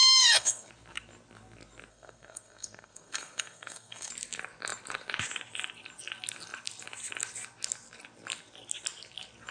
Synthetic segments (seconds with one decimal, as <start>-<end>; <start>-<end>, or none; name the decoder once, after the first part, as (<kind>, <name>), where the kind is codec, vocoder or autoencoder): 0.0-0.7 (codec, SNAC); 1.9-4.1